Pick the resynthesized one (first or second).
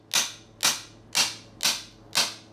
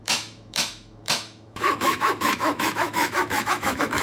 second